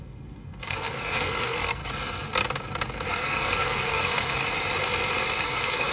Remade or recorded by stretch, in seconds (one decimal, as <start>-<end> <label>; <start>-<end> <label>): 0.0-1.8 remade; 1.8-3.1 recorded; 3.1-4.4 remade; 4.4-5.4 recorded; 5.4-5.9 remade